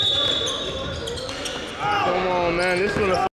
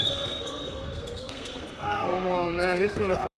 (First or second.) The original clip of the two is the first